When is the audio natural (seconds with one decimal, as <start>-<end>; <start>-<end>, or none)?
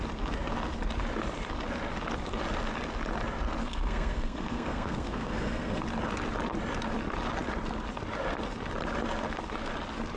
0.0-3.6; 5.8-10.2